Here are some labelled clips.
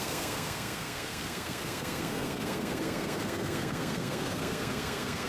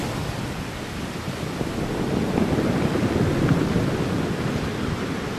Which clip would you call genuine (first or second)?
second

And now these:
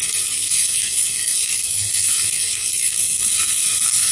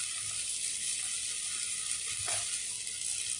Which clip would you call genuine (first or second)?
second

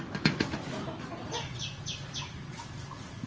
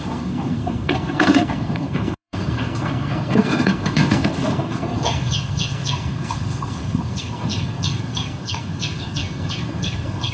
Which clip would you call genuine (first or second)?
first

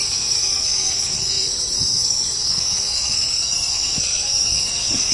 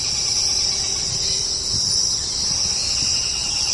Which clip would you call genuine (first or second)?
second